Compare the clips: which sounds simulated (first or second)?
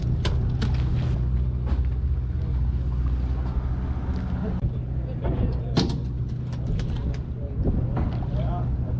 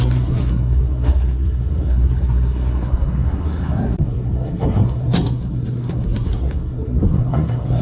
second